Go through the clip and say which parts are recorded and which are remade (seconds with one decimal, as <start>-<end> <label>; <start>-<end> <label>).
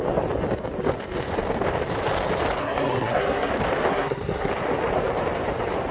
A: 0.0-2.6 recorded; 2.6-3.5 remade; 3.5-3.9 recorded; 3.9-4.5 remade; 4.5-5.9 recorded